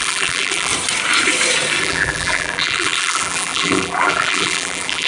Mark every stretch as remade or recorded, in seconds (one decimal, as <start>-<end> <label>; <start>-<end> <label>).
0.0-0.7 remade; 0.7-1.8 recorded; 1.8-5.1 remade